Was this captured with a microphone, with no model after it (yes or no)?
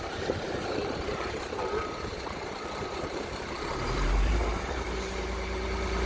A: no